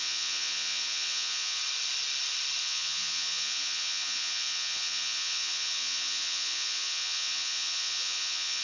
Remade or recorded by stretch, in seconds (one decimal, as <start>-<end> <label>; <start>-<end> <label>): 0.0-1.6 remade; 1.6-2.6 recorded; 2.6-8.6 remade